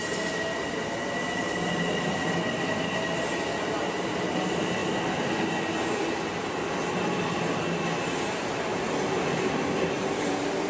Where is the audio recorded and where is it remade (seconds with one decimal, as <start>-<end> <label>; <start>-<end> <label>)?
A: 0.0-10.7 recorded